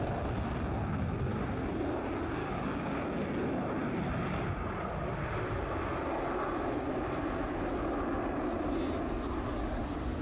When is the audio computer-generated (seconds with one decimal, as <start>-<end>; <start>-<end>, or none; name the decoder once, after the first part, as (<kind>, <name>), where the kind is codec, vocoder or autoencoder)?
2.4-3.0 (codec, DAC)